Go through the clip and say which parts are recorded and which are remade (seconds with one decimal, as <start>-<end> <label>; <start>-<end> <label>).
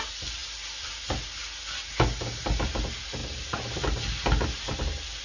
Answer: 0.0-5.2 recorded